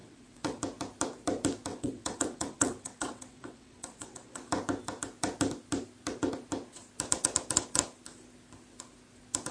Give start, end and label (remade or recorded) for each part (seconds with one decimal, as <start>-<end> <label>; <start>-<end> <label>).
0.0-0.6 remade; 0.6-1.7 recorded; 1.7-4.5 remade; 4.5-9.5 recorded